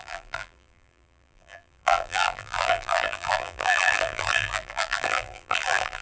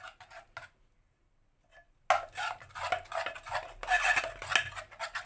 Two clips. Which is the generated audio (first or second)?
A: first